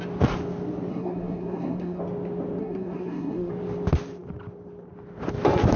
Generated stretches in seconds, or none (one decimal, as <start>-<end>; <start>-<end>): 0.9-2.0; 2.6-3.5